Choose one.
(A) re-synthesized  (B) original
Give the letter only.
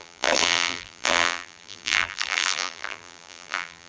A